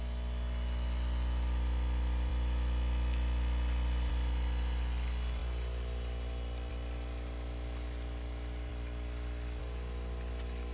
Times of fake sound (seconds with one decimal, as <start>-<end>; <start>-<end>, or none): none